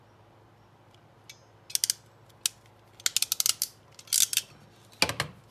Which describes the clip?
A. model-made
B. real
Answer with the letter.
B